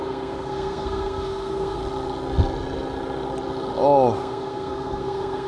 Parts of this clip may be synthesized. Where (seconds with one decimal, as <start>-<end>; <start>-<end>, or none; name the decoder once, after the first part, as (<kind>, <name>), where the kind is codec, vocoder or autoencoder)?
0.0-1.8 (codec, SNAC); 4.2-5.5